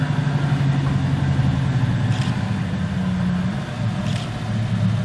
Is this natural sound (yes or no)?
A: yes